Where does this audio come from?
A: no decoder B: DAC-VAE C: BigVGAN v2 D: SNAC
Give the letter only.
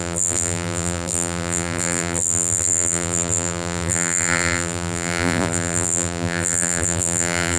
C